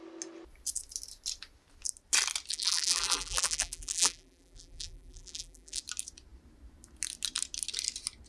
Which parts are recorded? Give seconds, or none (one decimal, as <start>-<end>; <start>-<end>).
0.0-2.5; 5.8-8.3